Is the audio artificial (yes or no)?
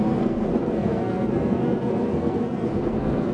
yes